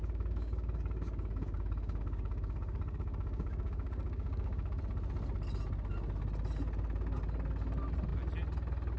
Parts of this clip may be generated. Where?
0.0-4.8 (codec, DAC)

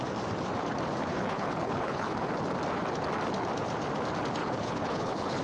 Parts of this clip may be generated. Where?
1.1-2.3 (codec, HILCodec); 4.4-5.4

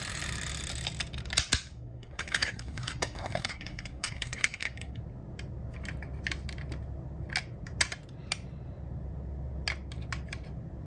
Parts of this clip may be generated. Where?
1.7-5.0 (codec, SNAC)

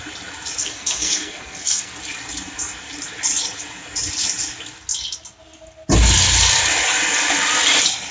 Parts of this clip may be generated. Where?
0.6-2.0 (codec, SNAC)

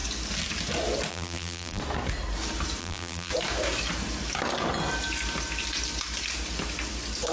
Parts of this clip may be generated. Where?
1.1-1.8 (vocoder, BigVGAN v2); 2.8-3.3

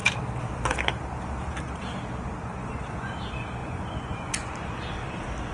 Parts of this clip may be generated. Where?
2.5-3.1 (vocoder, Vocos); 3.6-4.5

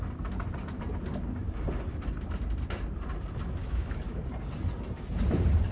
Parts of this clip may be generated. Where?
3.6-4.2 (autoencoder, DAC-VAE)